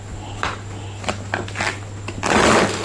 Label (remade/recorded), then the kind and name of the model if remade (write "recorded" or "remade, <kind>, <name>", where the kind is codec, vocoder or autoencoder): recorded